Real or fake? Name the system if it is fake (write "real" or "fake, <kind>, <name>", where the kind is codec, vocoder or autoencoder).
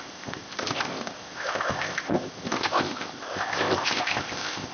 fake, codec, ZipCodec